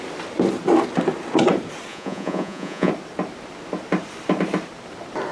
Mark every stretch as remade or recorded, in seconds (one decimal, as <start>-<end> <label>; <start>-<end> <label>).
0.0-1.9 recorded; 1.9-2.9 remade; 2.9-5.3 recorded